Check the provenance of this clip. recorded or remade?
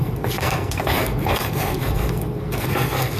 remade